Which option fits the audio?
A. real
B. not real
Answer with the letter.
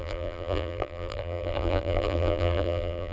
B